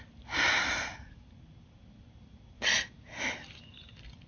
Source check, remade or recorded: recorded